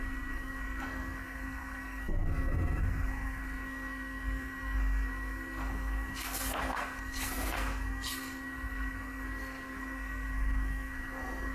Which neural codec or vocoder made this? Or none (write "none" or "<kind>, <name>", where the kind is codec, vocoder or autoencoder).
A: codec, SNAC